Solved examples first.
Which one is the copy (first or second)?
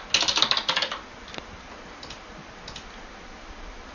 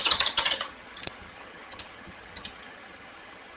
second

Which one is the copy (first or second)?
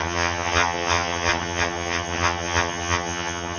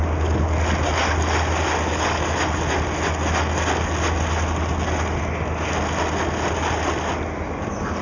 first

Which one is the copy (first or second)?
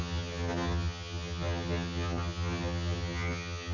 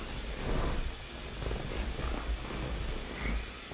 first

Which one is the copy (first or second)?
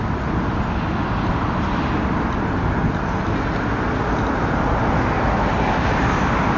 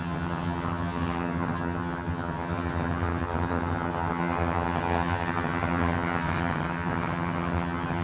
second